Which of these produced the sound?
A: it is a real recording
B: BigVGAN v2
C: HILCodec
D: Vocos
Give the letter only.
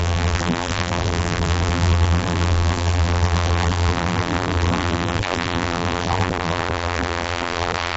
B